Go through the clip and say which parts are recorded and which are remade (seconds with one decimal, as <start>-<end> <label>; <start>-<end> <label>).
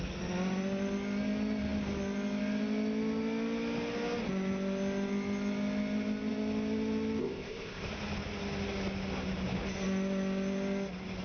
0.0-7.2 recorded; 7.2-7.9 remade; 7.9-11.2 recorded